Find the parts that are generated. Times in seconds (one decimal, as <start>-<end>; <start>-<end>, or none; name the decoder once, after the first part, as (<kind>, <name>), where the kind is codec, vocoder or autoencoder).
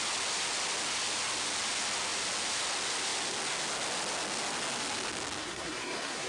5.4-6.3 (codec, SNAC)